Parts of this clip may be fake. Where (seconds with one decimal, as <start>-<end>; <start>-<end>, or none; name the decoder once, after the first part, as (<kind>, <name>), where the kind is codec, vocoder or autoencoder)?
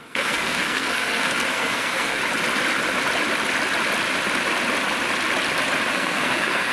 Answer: 0.0-2.2 (codec, SNAC); 5.9-6.7